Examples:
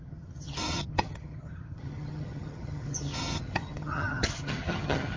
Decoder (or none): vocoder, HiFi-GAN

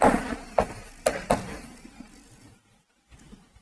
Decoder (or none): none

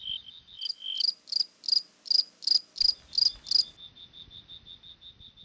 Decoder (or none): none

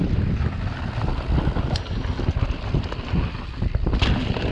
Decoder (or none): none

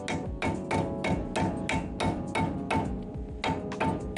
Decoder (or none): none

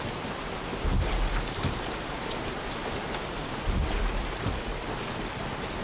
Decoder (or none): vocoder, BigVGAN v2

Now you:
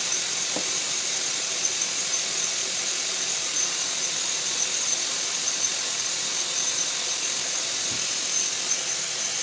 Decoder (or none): vocoder, BigVGAN v2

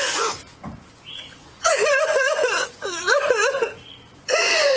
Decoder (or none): vocoder, Vocos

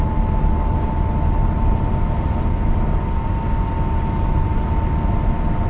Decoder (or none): none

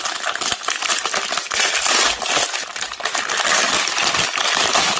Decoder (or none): none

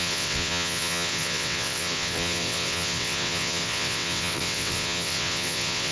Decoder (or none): vocoder, WaveNeXt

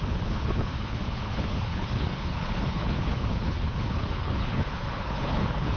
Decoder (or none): codec, HILCodec